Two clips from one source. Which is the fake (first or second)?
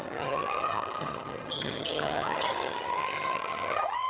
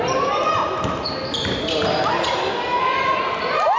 first